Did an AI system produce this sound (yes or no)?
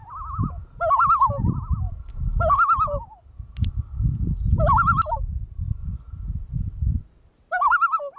no